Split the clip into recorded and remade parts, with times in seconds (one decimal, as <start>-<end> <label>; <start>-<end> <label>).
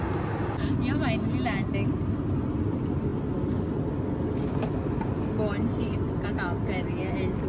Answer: 0.0-7.5 recorded